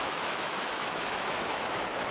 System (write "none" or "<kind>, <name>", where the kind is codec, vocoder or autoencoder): autoencoder, DAC-VAE